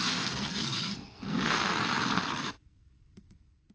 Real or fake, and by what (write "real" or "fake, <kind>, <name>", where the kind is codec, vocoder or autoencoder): fake, codec, SNAC